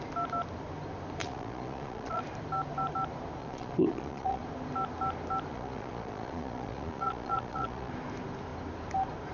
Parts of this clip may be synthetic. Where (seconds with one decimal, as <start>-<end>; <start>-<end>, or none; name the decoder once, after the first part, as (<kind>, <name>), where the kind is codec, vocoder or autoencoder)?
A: 1.2-2.2 (vocoder, Vocos); 3.4-4.4; 5.5-7.9